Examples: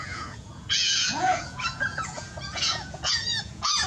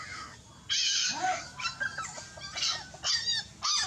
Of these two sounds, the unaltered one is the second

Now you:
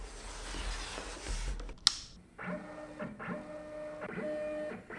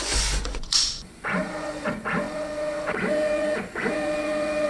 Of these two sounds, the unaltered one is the first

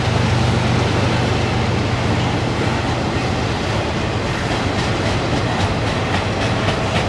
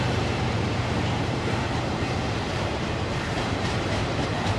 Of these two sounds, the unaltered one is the first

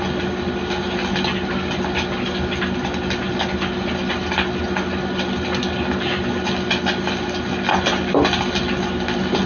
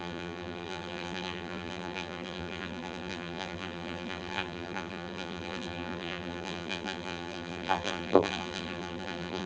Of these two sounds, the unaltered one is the first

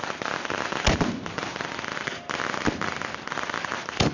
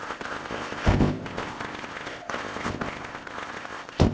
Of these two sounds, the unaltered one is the first